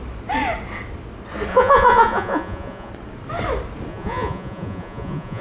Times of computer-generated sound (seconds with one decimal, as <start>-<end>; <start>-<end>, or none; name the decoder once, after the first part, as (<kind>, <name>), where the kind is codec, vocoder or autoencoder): 1.5-2.9 (vocoder, Vocos); 3.9-5.4

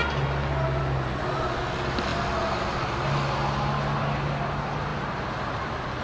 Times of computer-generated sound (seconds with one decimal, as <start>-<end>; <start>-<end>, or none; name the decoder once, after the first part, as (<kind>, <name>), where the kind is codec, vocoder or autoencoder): none

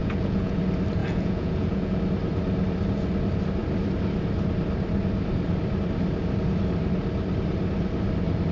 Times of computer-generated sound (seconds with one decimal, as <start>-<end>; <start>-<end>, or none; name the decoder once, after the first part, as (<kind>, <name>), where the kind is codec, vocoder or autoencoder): 0.0-0.6 (vocoder, Vocos); 1.0-2.0

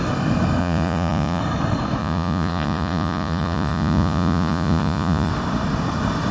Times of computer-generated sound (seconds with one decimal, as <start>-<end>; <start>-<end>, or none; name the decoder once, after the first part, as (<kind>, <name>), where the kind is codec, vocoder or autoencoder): 0.6-1.4 (vocoder, Vocos); 2.0-5.3

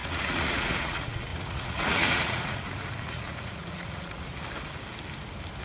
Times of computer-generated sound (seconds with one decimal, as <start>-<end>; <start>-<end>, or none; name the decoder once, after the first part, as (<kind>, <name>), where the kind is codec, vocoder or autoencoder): 0.0-4.3 (vocoder, Vocos)

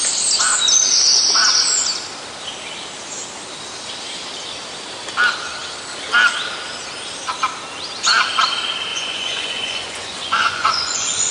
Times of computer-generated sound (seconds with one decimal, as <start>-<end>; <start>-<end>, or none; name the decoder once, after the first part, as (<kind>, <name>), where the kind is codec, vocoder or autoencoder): 8.9-11.3 (vocoder, Vocos)

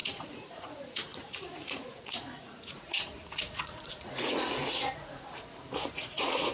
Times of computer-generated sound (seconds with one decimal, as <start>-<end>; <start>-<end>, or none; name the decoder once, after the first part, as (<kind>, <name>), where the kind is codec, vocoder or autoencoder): 0.0-6.5 (vocoder, Vocos)

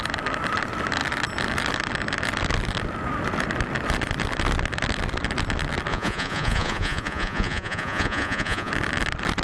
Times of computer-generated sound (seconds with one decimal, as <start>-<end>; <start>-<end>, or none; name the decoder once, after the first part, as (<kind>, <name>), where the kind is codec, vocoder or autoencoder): 5.9-8.7 (vocoder, Vocos)